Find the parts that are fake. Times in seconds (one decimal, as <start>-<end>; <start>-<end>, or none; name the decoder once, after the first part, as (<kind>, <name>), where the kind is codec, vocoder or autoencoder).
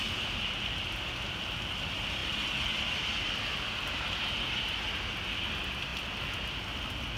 none